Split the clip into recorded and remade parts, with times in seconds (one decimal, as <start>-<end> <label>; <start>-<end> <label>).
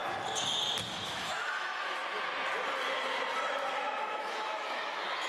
0.0-0.9 recorded; 0.9-2.0 remade; 2.0-4.0 recorded; 4.0-5.3 remade